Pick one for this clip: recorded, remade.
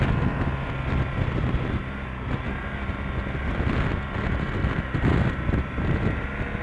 recorded